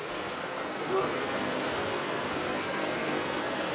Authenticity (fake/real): fake